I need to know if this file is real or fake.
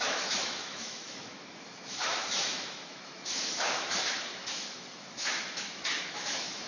fake